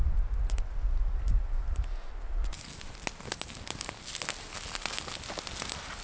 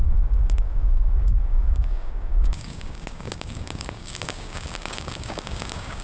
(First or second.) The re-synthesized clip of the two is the second